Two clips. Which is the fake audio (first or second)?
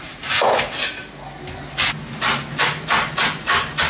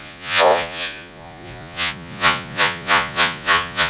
second